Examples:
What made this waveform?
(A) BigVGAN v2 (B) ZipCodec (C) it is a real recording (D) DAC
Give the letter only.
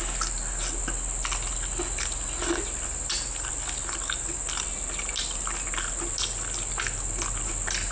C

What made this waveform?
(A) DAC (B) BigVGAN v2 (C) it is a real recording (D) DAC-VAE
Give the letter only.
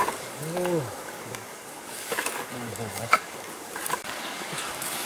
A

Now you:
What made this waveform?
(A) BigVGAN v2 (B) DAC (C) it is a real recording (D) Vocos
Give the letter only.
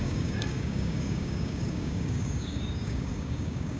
B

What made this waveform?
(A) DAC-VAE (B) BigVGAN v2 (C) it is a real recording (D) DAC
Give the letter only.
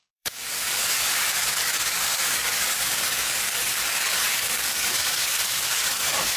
D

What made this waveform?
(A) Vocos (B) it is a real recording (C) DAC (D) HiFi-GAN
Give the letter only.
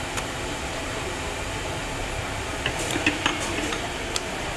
B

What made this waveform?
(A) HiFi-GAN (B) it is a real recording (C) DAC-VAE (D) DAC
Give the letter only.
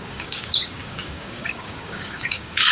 D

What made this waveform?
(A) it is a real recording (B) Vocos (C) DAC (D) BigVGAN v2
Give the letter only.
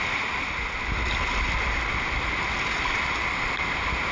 A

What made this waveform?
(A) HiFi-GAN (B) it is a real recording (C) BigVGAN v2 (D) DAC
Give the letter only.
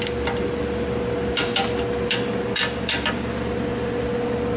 B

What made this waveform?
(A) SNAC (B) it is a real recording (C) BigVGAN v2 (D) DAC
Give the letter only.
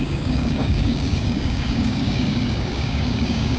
D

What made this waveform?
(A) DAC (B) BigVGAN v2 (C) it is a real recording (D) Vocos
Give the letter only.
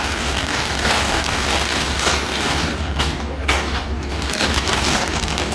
A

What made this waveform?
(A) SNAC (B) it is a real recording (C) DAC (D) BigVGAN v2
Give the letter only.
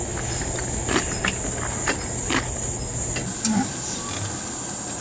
B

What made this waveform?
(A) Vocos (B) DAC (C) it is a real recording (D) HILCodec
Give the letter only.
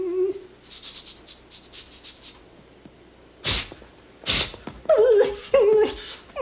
C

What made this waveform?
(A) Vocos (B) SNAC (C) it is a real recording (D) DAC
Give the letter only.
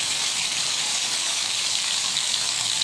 D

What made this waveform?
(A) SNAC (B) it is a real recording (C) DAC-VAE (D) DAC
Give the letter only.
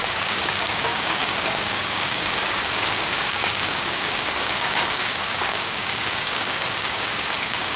D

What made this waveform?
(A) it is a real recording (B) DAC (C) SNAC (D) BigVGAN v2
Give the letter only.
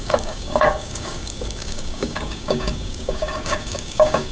B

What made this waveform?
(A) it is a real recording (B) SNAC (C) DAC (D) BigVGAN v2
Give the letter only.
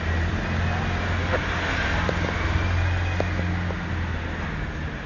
A